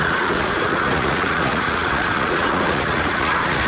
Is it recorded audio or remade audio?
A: remade